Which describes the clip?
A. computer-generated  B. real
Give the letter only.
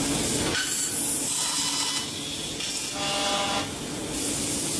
B